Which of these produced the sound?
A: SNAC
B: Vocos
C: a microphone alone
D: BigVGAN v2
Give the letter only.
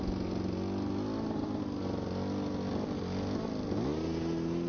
C